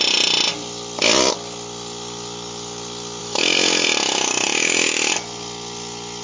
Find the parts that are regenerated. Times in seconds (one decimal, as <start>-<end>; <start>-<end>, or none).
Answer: 3.2-5.1